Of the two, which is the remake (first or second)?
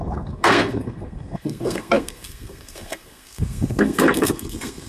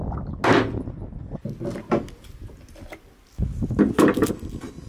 first